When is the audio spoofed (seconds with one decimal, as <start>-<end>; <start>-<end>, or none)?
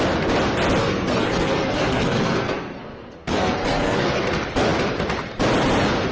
0.8-4.2